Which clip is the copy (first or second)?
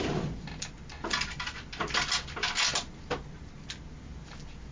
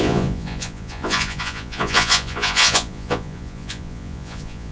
second